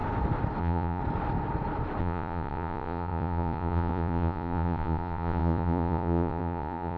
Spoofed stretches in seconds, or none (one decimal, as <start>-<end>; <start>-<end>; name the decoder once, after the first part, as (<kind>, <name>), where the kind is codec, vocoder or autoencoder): 0.6-1.0 (vocoder, Vocos); 2.0-7.0